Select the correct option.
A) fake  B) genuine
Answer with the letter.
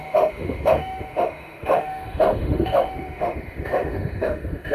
A